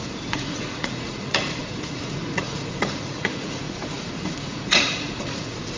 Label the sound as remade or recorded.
remade